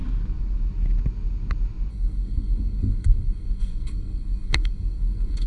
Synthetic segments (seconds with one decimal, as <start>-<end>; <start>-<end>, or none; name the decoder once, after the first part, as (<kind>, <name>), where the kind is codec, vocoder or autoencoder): 1.9-5.5 (codec, SNAC)